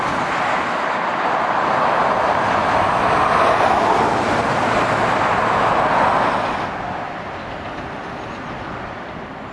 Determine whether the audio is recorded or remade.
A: recorded